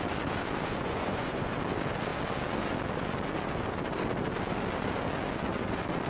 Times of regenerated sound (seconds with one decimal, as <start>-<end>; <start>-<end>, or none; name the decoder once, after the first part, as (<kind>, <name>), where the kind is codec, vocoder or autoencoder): 0.7-1.5 (vocoder, Vocos)